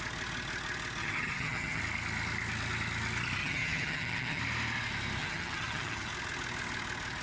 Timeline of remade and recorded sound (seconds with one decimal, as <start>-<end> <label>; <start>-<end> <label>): 0.0-1.0 recorded; 1.0-1.8 remade; 1.8-3.4 recorded; 3.4-4.4 remade; 4.4-5.2 recorded; 5.2-6.1 remade; 6.1-7.2 recorded